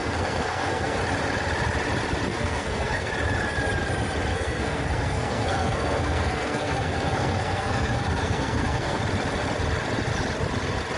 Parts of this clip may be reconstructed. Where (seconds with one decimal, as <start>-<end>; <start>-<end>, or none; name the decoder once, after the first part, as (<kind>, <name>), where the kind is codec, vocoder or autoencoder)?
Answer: 0.0-1.0 (codec, SNAC); 2.3-3.1; 4.3-9.0